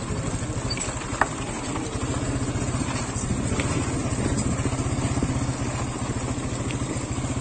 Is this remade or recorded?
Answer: recorded